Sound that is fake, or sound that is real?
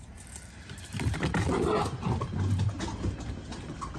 real